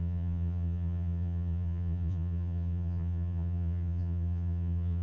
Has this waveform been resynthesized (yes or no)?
yes